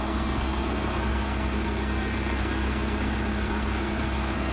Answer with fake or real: fake